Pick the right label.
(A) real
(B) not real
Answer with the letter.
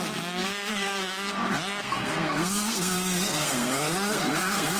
B